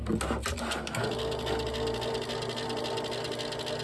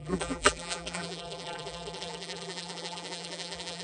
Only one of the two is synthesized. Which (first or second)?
second